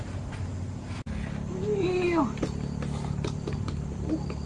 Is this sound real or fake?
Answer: fake